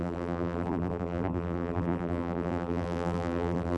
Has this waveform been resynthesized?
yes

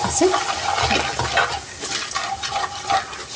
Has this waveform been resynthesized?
no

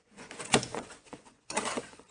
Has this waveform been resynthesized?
yes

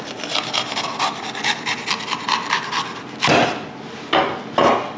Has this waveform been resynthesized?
no